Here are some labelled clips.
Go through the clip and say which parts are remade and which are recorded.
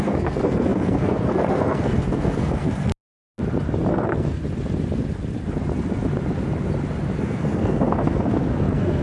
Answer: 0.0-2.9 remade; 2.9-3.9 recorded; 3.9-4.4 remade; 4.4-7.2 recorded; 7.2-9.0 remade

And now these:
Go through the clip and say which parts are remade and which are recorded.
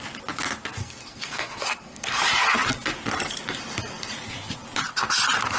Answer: 0.0-0.8 recorded; 0.8-2.2 remade; 2.2-5.6 recorded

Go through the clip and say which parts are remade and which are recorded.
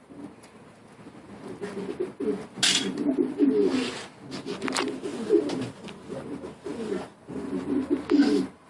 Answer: 0.0-8.7 recorded